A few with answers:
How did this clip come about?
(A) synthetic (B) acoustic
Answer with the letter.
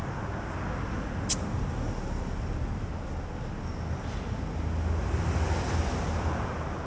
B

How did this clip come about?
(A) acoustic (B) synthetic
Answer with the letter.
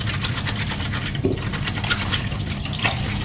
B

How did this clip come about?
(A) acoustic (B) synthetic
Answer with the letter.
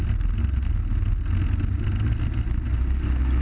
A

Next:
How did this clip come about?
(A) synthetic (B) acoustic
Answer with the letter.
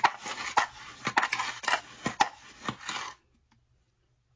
B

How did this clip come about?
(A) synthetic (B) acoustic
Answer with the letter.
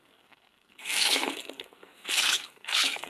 A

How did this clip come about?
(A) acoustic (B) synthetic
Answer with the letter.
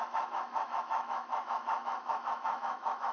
B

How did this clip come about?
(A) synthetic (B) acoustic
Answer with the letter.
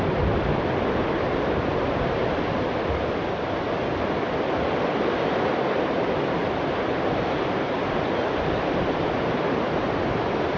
B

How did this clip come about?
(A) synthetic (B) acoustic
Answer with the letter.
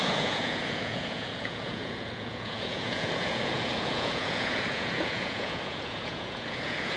A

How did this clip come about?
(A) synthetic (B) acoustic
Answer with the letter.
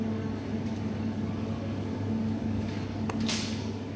A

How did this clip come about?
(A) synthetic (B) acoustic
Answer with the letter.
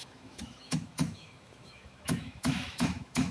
A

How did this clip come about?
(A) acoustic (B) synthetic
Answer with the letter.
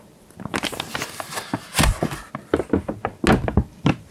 A